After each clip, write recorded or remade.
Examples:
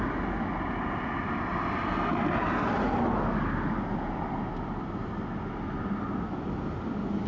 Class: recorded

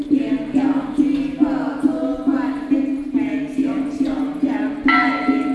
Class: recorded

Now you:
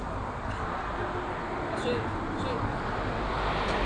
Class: recorded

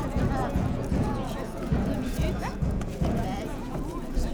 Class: remade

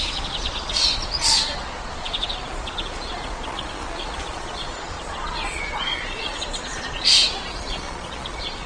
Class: remade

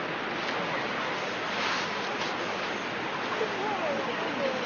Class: recorded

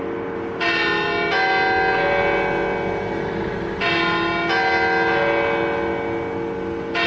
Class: recorded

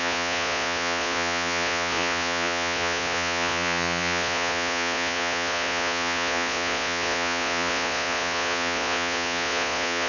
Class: remade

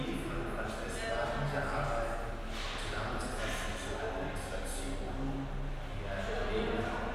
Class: recorded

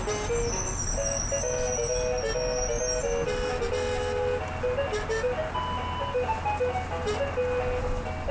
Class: recorded